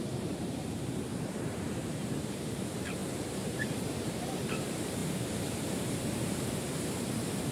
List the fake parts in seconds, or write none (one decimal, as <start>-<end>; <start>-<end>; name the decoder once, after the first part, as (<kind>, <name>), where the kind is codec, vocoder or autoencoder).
0.0-7.5 (vocoder, BigVGAN v2)